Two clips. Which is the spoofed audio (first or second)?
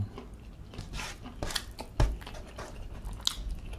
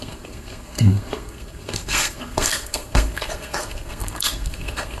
second